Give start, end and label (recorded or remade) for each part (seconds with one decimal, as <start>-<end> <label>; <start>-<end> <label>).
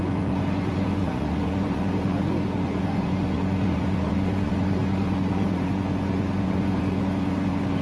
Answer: 0.0-7.8 remade